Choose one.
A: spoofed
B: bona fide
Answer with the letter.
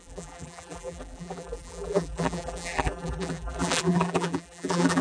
A